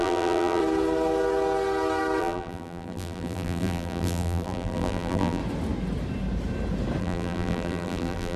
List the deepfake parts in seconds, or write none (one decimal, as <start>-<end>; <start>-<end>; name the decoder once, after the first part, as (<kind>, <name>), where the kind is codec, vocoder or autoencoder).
0.0-0.6 (vocoder, BigVGAN v2); 2.2-5.4; 7.0-8.4

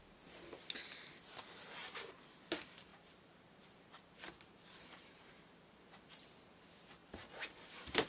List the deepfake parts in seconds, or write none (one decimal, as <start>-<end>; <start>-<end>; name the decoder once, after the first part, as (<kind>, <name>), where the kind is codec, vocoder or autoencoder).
1.8-2.4 (vocoder, BigVGAN v2); 2.9-6.3; 7.0-8.1

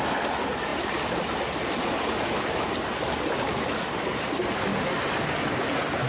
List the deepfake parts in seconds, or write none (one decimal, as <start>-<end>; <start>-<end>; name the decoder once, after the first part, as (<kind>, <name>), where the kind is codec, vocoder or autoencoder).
none

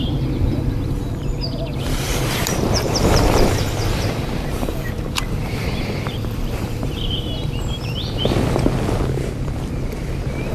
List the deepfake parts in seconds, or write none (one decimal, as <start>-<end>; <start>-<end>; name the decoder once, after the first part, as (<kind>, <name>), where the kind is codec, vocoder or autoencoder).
0.0-8.2 (vocoder, BigVGAN v2)